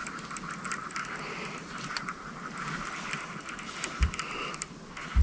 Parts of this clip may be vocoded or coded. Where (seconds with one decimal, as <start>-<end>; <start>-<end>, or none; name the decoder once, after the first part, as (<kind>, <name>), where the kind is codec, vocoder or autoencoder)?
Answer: none